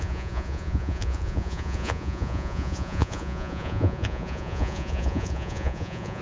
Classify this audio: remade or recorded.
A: remade